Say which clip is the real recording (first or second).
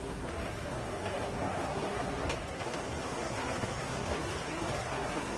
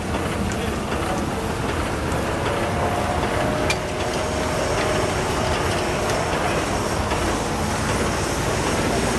second